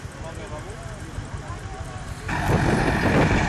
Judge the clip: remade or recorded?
recorded